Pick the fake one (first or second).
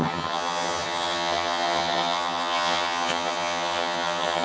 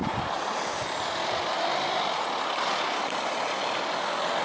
first